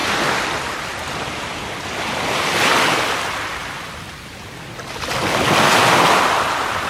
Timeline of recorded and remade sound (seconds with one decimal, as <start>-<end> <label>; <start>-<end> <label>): 0.0-1.4 remade; 1.4-3.6 recorded; 3.6-5.7 remade; 5.7-6.9 recorded